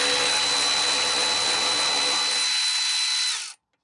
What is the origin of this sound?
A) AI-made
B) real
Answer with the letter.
B